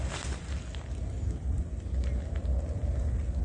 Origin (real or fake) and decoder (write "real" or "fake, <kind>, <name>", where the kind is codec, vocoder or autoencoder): real